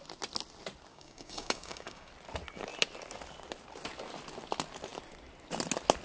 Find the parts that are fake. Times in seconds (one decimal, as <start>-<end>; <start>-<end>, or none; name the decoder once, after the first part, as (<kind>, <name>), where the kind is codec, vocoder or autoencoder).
0.9-2.1 (codec, DAC)